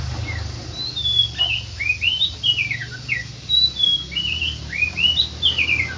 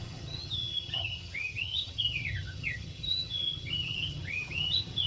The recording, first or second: first